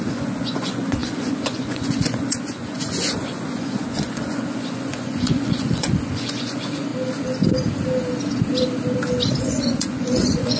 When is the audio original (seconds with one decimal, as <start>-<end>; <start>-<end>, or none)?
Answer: 6.9-9.4